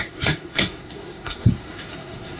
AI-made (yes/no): yes